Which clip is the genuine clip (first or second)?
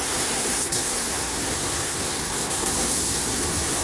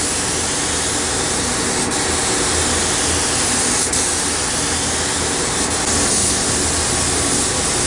second